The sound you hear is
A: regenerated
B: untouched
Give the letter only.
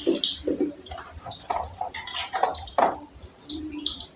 A